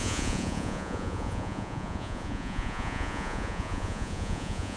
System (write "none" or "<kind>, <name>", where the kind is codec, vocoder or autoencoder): vocoder, Vocos